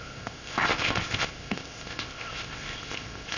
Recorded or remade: remade